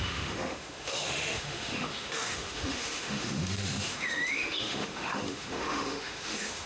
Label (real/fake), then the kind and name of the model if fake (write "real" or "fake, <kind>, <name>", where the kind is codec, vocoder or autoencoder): fake, autoencoder, DAC-VAE